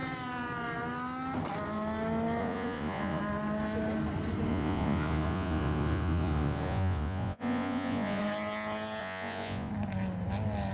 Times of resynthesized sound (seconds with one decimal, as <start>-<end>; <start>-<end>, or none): 2.4-3.2; 4.5-8.2; 9.0-9.7